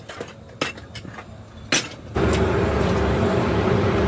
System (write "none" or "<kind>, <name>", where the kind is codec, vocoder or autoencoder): none